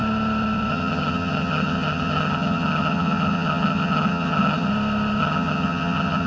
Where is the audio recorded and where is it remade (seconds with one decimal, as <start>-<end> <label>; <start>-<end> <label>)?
0.0-0.7 recorded; 0.7-4.7 remade; 4.7-5.2 recorded; 5.2-6.3 remade